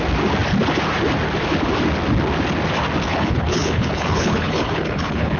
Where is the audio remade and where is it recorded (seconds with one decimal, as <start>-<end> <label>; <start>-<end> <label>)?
0.0-3.1 recorded; 3.1-5.4 remade